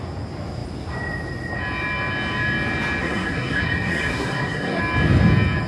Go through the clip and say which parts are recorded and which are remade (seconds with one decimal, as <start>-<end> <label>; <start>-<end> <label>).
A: 0.0-3.0 recorded; 3.0-4.8 remade; 4.8-5.7 recorded

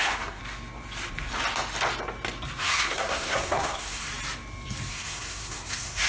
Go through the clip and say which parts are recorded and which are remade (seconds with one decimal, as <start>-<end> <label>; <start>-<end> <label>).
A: 0.0-0.4 remade; 0.4-2.6 recorded; 2.6-4.1 remade; 4.1-4.9 recorded; 4.9-6.1 remade